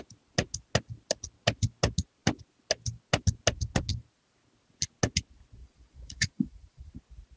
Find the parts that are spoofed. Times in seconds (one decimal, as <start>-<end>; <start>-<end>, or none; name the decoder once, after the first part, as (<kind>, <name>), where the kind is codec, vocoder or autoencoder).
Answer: 5.6-6.9 (vocoder, Vocos)